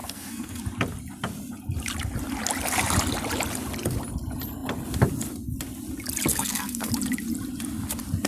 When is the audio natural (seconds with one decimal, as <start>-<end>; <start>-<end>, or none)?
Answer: 0.6-6.3; 6.9-8.3